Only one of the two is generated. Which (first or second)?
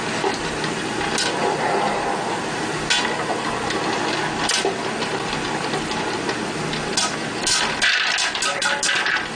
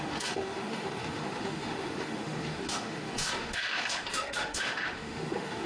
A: second